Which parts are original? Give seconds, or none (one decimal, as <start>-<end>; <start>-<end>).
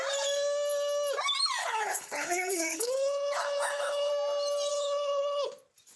0.0-1.6; 4.1-4.7; 5.5-6.0